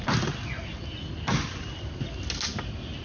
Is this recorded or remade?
recorded